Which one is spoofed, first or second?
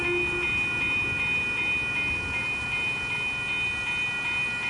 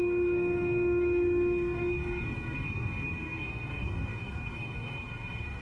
second